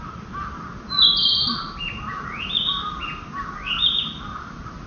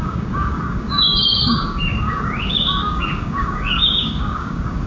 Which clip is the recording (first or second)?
first